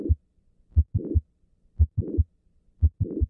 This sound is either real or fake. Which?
fake